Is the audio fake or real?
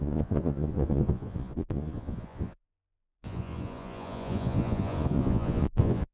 fake